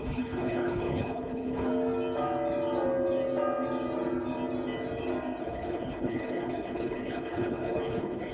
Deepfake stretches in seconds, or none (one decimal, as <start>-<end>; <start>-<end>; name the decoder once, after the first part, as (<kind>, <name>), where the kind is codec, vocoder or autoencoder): 0.0-1.7 (codec, HILCodec); 5.4-8.3

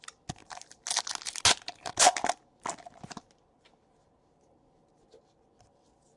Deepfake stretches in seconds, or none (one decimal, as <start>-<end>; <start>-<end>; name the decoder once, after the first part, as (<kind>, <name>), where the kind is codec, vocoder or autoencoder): none

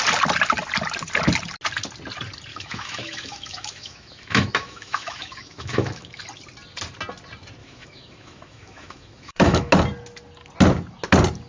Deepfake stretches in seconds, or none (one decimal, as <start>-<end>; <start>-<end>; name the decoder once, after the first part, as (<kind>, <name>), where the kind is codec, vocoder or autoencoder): 2.5-6.2 (autoencoder, DAC-VAE); 7.6-9.7